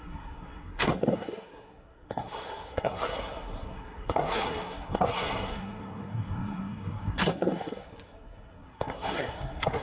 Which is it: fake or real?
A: fake